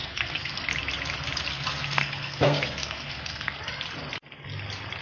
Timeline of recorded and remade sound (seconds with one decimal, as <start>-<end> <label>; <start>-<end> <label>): 0.0-0.6 remade; 0.6-1.5 recorded; 1.5-3.6 remade; 3.6-5.0 recorded